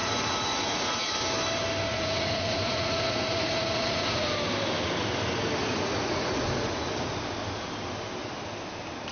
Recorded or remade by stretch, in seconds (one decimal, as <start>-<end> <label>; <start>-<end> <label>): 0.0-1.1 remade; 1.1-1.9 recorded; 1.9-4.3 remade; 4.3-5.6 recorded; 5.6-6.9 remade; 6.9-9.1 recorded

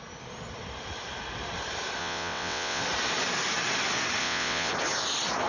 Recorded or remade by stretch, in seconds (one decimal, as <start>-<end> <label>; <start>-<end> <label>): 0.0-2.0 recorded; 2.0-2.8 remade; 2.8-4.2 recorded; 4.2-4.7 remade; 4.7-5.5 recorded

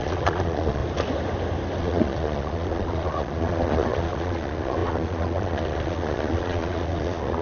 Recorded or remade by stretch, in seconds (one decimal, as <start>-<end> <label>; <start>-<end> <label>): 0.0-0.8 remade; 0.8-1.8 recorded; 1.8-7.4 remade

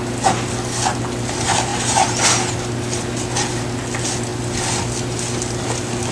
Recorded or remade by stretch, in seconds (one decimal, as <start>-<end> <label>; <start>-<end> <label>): 0.0-6.1 recorded

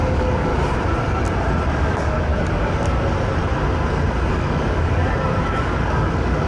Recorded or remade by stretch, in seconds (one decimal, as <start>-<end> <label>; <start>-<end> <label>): 0.0-0.5 remade; 0.5-1.8 recorded; 1.8-2.3 remade; 2.3-4.3 recorded; 4.3-5.0 remade; 5.0-5.5 recorded; 5.5-6.5 remade

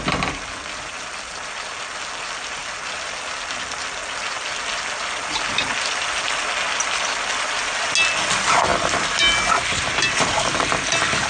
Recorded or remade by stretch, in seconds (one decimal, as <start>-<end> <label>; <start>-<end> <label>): 0.0-11.3 recorded

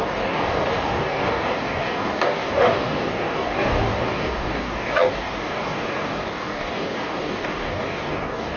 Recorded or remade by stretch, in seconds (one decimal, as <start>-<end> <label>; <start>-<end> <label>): 0.0-8.6 remade

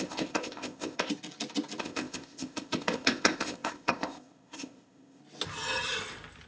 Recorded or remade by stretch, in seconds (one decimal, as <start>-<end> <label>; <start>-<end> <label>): 0.0-1.1 remade; 1.1-1.8 recorded; 1.8-5.2 remade; 5.2-6.5 recorded